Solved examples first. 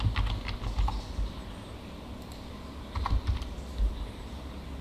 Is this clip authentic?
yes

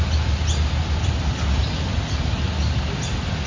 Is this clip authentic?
yes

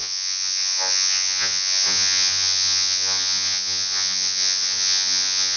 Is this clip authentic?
no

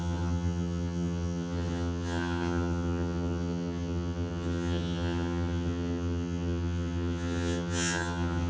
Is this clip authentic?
no